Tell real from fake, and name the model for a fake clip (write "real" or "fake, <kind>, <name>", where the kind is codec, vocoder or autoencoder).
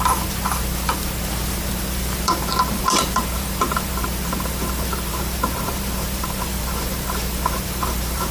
fake, vocoder, BigVGAN v2